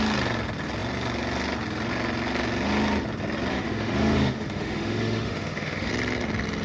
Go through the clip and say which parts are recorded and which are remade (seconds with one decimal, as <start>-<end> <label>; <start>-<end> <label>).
0.0-3.5 recorded; 3.5-5.9 remade; 5.9-6.6 recorded